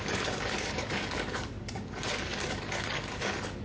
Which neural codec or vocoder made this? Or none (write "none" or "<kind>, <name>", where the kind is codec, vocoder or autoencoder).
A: codec, DAC